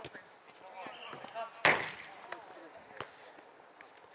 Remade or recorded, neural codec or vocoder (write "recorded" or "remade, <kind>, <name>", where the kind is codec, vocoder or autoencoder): recorded